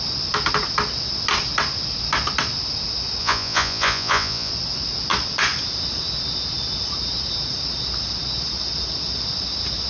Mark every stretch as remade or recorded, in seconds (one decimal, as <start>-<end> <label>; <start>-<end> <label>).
0.0-3.2 recorded; 3.2-4.5 remade; 4.5-9.9 recorded